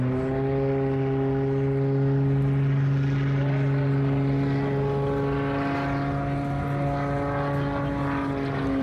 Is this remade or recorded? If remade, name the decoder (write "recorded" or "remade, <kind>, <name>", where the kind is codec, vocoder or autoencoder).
recorded